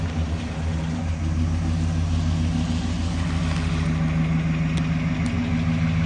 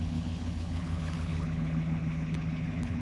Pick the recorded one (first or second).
first